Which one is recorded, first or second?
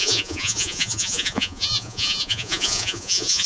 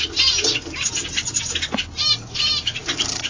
second